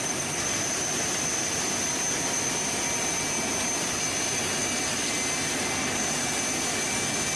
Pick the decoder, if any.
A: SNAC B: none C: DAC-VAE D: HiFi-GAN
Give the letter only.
B